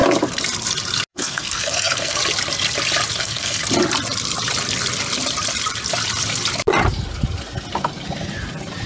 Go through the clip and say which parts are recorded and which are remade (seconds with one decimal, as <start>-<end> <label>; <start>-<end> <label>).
0.0-1.1 recorded; 1.1-2.2 remade; 2.2-3.2 recorded; 3.2-3.6 remade; 3.6-8.9 recorded